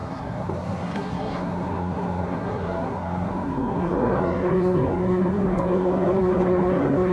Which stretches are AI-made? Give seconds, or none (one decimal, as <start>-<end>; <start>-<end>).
0.0-7.1